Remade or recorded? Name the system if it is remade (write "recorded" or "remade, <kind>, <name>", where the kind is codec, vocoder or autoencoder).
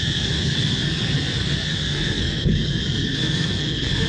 remade, codec, SNAC